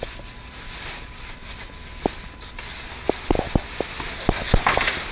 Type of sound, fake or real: real